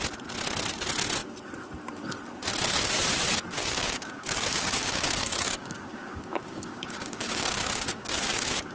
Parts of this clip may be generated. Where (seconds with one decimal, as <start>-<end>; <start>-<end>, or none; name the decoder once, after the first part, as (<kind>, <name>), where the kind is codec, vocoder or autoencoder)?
3.6-8.7 (codec, DAC)